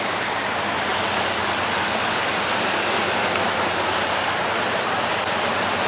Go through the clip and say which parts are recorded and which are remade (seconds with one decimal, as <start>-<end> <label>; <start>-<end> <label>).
0.0-5.9 recorded